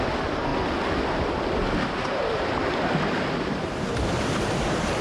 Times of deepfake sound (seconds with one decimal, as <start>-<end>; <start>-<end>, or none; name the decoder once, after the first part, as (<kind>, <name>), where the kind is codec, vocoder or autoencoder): none